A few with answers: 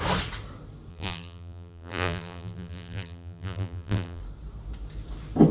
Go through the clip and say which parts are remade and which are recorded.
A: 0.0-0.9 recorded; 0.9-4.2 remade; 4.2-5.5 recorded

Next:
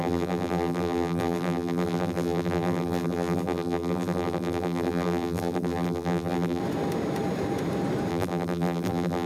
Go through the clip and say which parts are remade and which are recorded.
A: 0.0-6.6 remade; 6.6-8.1 recorded; 8.1-9.3 remade

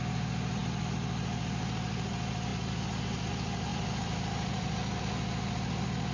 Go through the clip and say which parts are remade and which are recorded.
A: 0.0-3.7 recorded; 3.7-5.0 remade; 5.0-6.1 recorded

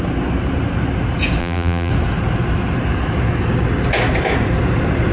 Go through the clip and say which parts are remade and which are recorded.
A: 0.0-1.4 recorded; 1.4-1.9 remade; 1.9-5.1 recorded

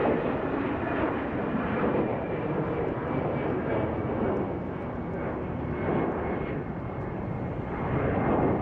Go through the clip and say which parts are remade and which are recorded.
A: 0.0-1.7 remade; 1.7-2.1 recorded; 2.1-3.7 remade; 3.7-8.6 recorded

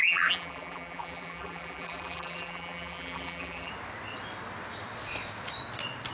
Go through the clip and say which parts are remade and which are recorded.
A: 0.0-3.7 remade; 3.7-6.1 recorded

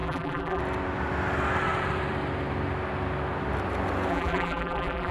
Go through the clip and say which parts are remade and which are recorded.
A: 0.0-0.6 remade; 0.6-4.1 recorded; 4.1-5.1 remade

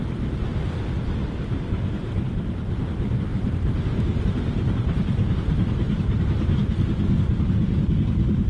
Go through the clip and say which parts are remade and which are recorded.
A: 0.0-8.5 recorded